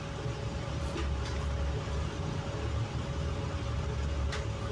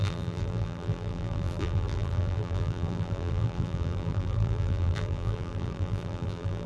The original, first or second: first